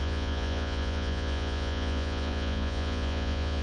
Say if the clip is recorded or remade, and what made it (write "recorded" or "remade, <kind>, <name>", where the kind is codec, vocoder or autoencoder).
remade, vocoder, Vocos